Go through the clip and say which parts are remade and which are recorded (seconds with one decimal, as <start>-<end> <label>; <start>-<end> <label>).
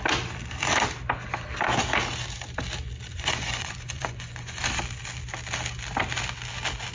0.0-3.1 recorded; 3.1-4.6 remade; 4.6-6.9 recorded